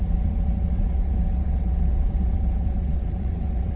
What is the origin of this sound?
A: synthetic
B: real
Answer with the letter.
A